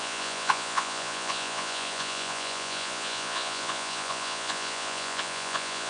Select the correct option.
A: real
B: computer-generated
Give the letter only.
B